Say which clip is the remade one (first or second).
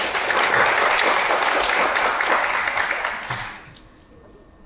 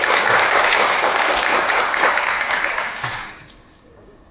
second